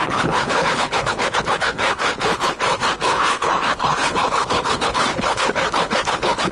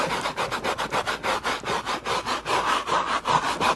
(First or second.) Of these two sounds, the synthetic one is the first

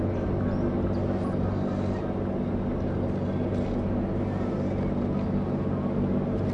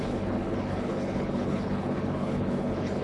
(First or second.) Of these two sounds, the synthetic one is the second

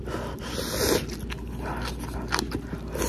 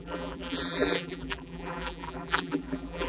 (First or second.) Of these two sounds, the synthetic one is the second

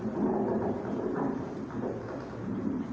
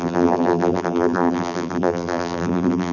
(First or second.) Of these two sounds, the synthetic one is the second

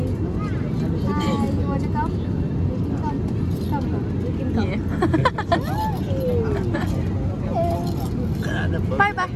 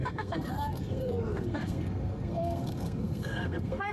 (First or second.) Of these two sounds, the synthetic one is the second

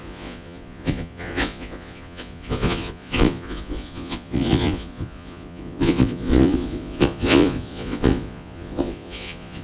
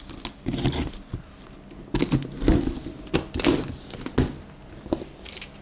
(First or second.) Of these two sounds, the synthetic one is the first